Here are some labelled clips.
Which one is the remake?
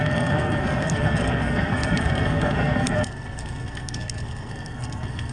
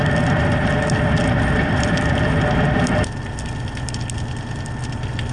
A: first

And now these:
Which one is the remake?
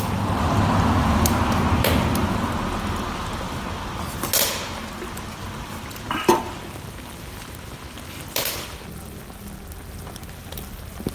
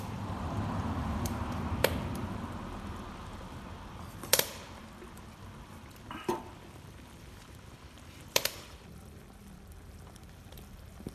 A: second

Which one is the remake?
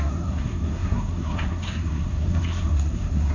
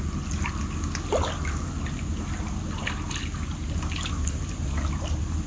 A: first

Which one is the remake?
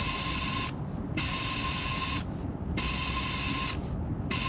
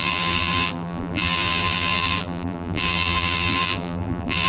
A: second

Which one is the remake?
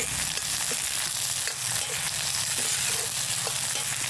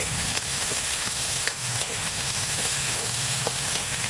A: second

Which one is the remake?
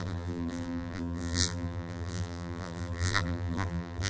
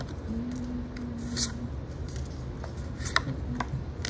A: first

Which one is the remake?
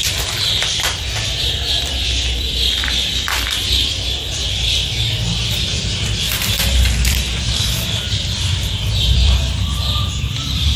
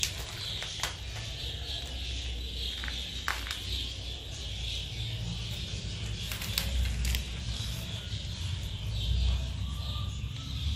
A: first